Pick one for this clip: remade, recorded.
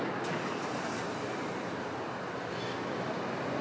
recorded